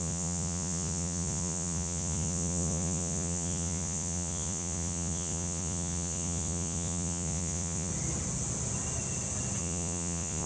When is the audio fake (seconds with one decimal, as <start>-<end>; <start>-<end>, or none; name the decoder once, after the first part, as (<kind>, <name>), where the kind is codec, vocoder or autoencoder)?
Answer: 0.0-7.9 (vocoder, Vocos); 9.6-10.5